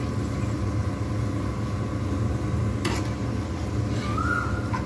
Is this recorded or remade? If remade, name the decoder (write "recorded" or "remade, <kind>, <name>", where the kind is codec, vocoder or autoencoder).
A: recorded